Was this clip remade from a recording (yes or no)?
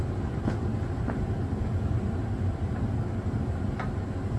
no